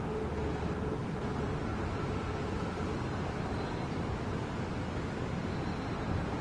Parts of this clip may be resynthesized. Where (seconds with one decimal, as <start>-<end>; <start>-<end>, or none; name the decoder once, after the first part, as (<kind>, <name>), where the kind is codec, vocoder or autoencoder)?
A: none